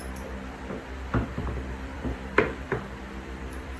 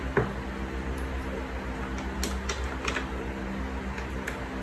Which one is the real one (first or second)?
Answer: second